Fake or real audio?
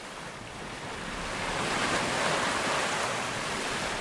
real